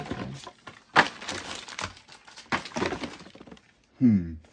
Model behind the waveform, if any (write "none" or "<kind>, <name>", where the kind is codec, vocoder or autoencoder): none